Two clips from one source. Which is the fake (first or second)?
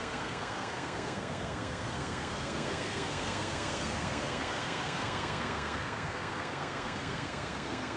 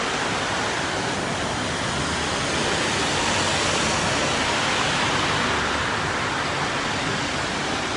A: first